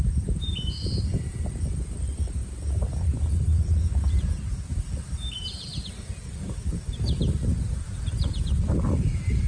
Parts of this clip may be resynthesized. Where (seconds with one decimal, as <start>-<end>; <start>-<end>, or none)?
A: 0.0-2.4; 4.1-5.7; 6.7-9.5